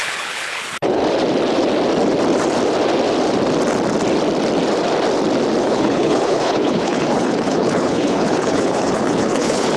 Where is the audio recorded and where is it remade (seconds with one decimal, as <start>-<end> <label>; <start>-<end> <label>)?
0.0-1.0 remade; 1.0-5.6 recorded; 5.6-9.8 remade